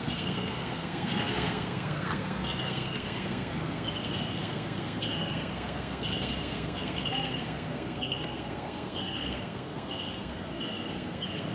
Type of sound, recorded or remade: remade